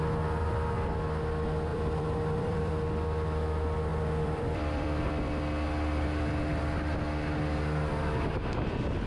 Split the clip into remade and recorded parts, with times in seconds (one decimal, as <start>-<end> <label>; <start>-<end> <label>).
0.0-1.7 recorded; 1.7-2.7 remade; 2.7-3.9 recorded; 3.9-5.0 remade; 5.0-9.1 recorded